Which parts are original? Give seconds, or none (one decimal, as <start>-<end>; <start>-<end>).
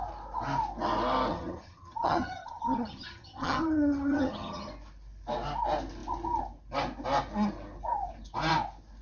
0.0-1.3; 4.7-9.0